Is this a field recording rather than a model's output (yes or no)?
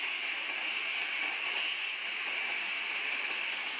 yes